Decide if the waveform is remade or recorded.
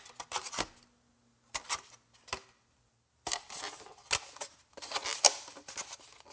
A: recorded